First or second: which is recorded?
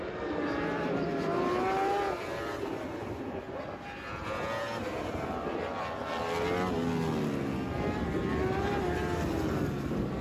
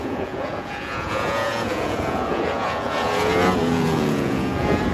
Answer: first